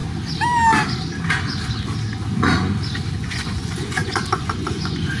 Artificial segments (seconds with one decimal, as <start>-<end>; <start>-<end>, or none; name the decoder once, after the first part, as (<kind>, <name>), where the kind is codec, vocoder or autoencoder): 3.1-5.2 (vocoder, Vocos)